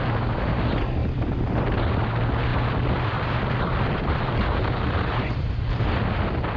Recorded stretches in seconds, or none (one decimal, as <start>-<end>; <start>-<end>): 0.0-1.0; 1.9-2.5